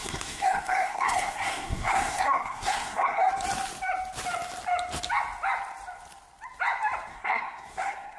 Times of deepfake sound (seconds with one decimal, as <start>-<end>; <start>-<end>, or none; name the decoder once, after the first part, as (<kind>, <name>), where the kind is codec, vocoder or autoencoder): 0.0-3.3 (codec, SNAC); 7.1-8.2